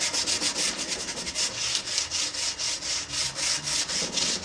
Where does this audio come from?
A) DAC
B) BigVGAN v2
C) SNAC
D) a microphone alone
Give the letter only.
D